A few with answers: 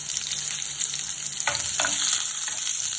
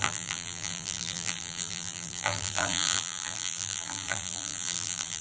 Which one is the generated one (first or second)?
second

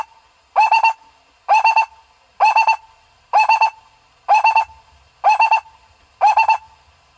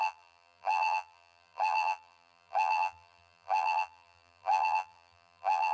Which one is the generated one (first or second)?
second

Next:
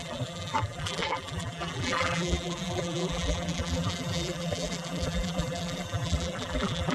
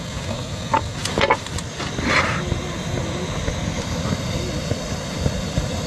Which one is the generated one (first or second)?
first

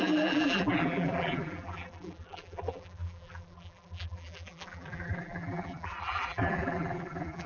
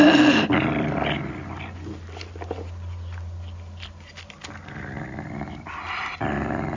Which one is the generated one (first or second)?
first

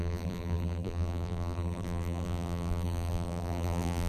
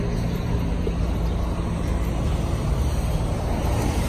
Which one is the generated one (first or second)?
first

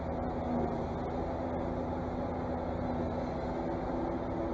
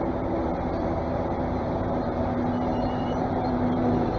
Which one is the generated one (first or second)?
second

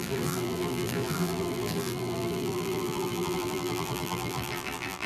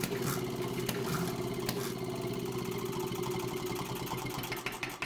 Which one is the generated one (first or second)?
first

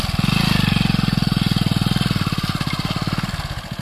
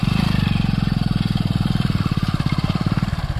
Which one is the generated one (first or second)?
second